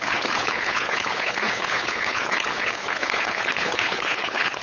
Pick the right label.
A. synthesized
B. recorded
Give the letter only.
A